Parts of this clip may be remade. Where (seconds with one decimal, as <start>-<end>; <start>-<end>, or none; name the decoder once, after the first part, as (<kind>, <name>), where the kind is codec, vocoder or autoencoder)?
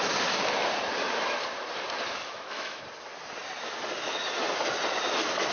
2.2-2.8 (autoencoder, DAC-VAE)